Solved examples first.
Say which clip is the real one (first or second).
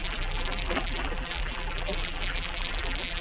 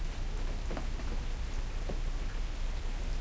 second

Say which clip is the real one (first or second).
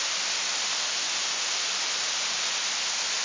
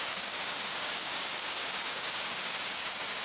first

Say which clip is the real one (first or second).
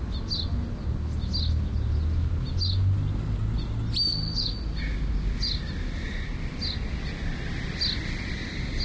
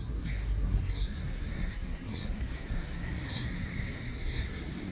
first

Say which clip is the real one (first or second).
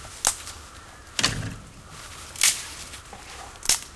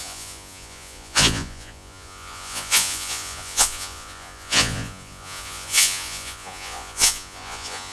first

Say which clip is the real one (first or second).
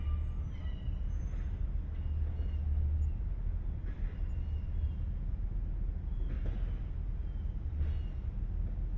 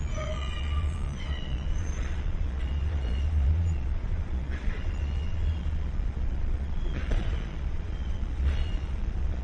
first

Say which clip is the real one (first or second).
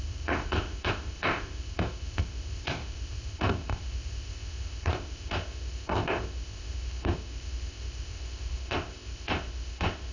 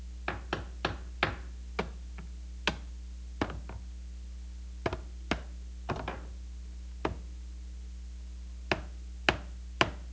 second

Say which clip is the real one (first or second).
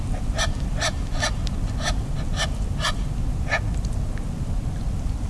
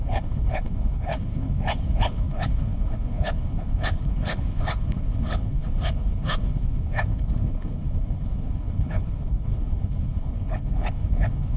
first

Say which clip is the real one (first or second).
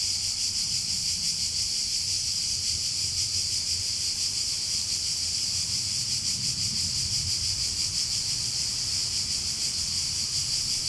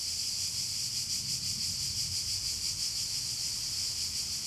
second